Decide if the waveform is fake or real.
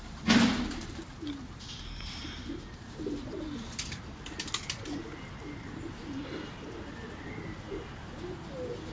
real